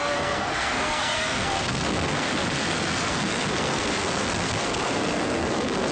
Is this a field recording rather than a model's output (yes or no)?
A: no